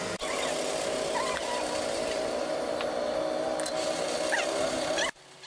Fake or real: real